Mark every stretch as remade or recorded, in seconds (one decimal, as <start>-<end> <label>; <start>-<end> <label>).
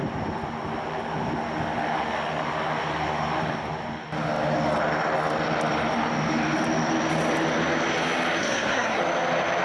0.0-8.4 recorded; 8.4-9.0 remade; 9.0-9.6 recorded